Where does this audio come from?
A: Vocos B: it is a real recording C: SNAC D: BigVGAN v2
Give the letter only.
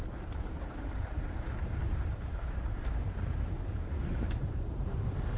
D